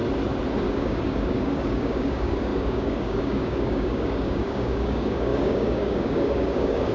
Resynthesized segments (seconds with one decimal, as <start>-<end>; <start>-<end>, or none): 0.6-6.9